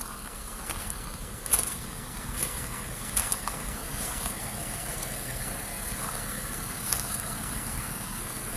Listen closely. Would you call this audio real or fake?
fake